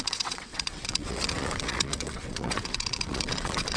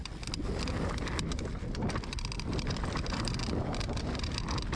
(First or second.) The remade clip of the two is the first